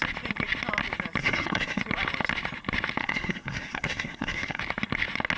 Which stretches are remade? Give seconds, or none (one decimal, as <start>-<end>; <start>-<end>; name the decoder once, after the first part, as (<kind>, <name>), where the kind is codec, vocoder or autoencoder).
1.2-1.8 (codec, SNAC); 3.0-4.6